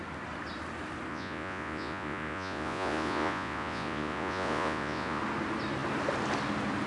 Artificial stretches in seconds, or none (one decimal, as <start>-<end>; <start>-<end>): 1.1-5.2